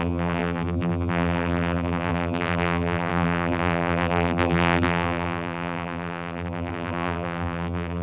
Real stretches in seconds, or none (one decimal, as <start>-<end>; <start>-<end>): none